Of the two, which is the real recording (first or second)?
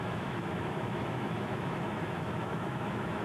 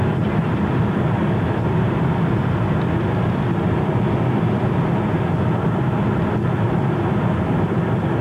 second